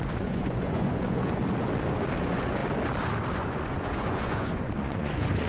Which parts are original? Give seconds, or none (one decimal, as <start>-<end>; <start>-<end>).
1.4-2.2; 2.6-3.3

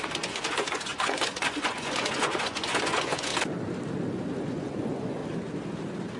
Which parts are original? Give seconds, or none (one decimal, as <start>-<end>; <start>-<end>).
3.3-4.4; 5.2-6.2

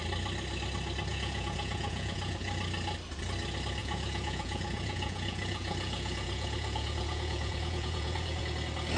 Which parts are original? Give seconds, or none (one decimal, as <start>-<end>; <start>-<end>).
0.0-1.1; 2.5-3.8; 8.4-9.0

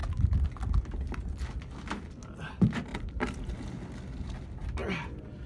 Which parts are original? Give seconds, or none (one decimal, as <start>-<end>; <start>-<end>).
0.0-5.5

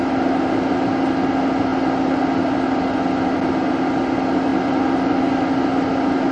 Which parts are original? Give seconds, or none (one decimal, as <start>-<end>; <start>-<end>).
0.0-6.3

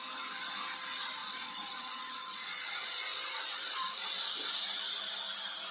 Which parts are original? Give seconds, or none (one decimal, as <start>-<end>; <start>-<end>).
0.0-1.2; 4.6-5.7

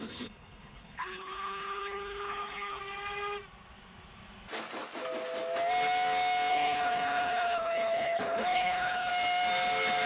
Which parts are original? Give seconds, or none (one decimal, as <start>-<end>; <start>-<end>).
2.8-6.5; 9.1-10.1

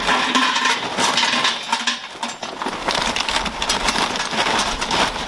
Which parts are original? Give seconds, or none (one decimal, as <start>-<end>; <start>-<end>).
0.0-5.3